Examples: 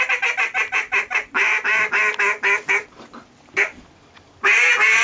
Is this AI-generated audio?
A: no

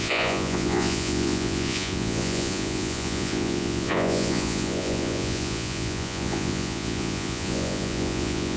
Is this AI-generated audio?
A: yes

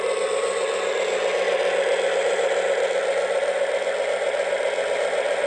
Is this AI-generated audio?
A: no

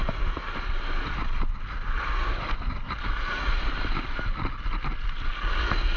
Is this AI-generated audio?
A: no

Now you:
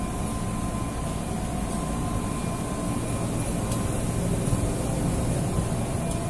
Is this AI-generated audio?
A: no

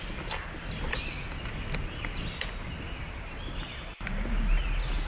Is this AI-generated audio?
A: no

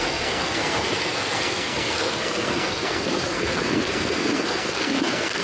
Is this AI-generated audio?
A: yes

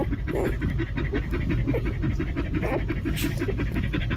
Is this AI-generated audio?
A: yes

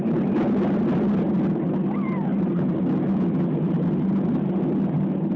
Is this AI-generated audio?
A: no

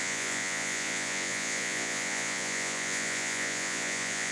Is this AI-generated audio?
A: yes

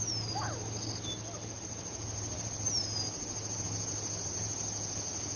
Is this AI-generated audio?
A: no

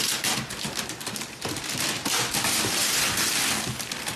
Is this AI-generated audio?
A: no